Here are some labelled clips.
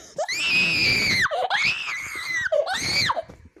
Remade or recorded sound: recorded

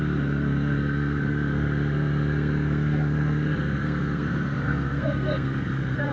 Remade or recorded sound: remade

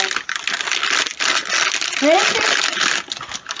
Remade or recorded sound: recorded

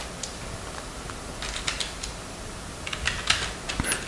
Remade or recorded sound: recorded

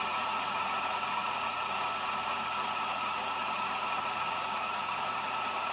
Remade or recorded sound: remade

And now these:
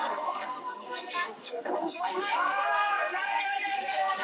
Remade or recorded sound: remade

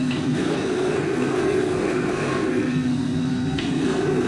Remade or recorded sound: remade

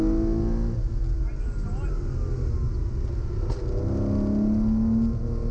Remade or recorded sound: recorded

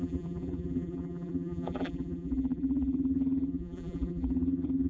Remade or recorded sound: remade